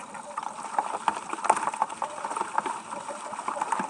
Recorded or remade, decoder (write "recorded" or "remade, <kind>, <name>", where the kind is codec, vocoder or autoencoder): recorded